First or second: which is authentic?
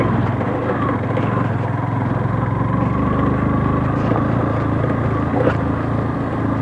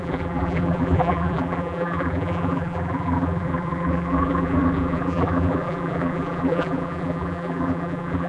first